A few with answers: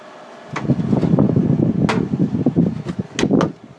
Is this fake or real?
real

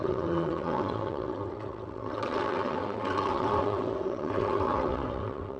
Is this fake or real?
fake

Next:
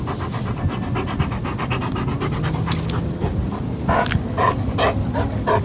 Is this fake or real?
real